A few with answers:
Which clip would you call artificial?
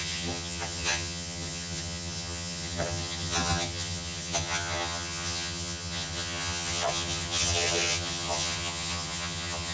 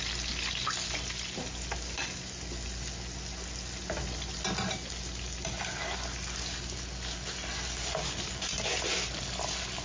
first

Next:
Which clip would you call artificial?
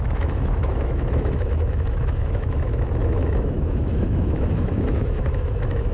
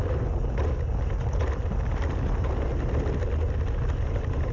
first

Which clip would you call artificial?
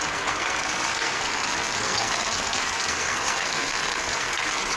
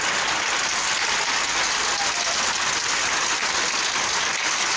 first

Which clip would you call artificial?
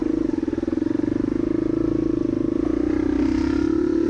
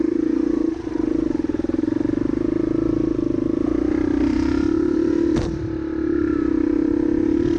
second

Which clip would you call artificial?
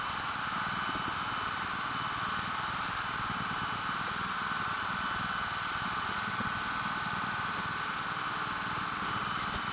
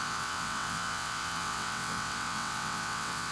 second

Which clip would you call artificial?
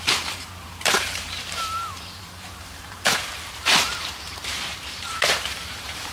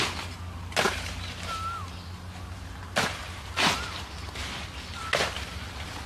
first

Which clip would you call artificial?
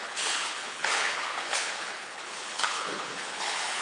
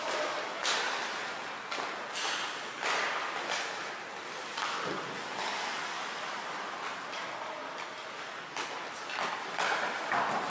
first